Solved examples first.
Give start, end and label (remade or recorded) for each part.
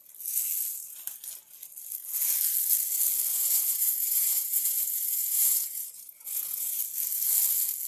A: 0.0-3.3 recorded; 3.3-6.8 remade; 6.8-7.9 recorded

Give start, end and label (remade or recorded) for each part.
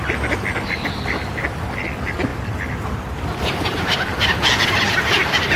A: 0.0-5.6 recorded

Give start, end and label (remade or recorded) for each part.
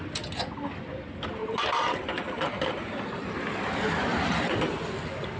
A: 0.0-1.4 recorded; 1.4-3.0 remade; 3.0-4.1 recorded; 4.1-4.6 remade; 4.6-5.4 recorded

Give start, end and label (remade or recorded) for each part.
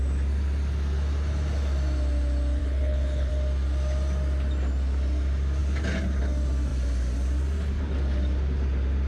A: 0.0-2.6 recorded; 2.6-3.3 remade; 3.3-9.1 recorded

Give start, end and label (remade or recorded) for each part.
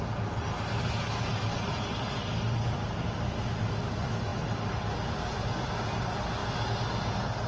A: 0.0-7.5 recorded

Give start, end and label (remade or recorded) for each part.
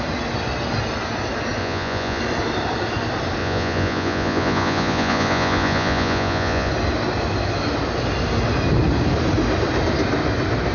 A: 0.0-1.6 recorded; 1.6-2.2 remade; 2.2-3.4 recorded; 3.4-6.7 remade; 6.7-10.7 recorded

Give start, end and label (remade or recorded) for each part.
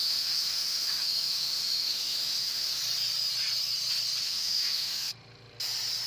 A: 0.0-2.8 remade; 2.8-4.2 recorded; 4.2-5.1 remade; 5.1-6.1 recorded